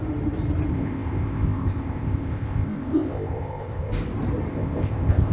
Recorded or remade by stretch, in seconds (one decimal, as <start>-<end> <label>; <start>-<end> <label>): 0.0-0.7 recorded; 0.7-3.9 remade; 3.9-4.5 recorded; 4.5-5.3 remade